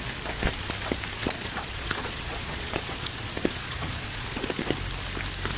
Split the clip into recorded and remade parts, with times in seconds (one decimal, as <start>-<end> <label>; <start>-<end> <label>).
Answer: 0.0-1.2 recorded; 1.2-4.6 remade; 4.6-5.6 recorded